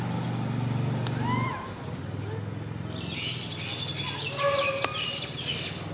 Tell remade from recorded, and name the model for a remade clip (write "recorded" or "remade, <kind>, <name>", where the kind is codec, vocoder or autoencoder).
recorded